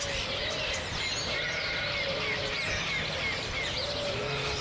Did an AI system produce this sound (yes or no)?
no